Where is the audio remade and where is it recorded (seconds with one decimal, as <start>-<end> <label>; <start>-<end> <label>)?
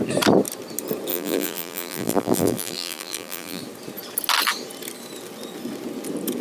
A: 0.0-1.1 recorded; 1.1-3.6 remade; 3.6-6.4 recorded